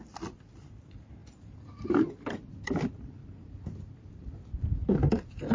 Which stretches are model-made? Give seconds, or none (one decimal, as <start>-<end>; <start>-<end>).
1.2-2.1; 3.2-5.5